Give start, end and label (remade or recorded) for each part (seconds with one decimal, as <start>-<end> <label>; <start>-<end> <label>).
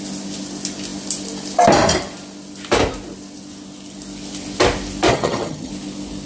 0.0-5.1 recorded; 5.1-5.7 remade; 5.7-6.3 recorded